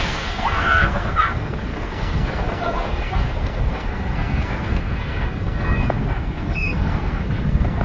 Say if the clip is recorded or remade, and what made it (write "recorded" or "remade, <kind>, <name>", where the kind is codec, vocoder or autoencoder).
remade, codec, SNAC